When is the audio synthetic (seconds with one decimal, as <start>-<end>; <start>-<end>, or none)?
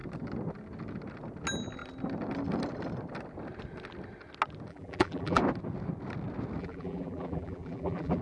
4.7-5.4; 6.6-8.2